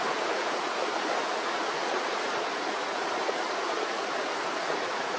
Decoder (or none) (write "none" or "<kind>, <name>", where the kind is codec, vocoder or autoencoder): vocoder, Vocos